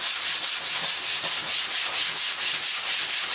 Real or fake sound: real